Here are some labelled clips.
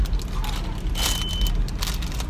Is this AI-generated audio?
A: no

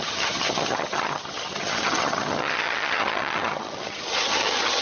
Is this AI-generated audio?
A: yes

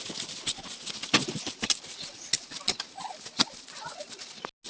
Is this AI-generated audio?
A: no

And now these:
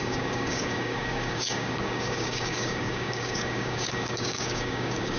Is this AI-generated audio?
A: yes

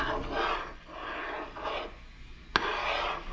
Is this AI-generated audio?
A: no